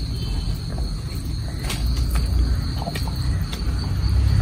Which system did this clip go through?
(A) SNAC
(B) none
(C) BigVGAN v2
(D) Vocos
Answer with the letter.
B